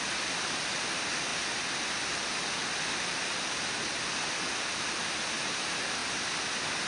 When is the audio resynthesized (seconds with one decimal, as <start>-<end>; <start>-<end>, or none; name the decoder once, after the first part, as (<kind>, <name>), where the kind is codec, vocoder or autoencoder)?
none